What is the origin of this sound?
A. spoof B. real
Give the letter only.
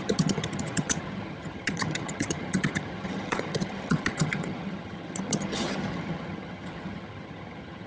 A